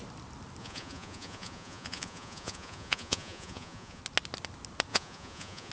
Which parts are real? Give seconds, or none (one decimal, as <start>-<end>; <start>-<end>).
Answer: 0.0-0.6; 4.0-4.9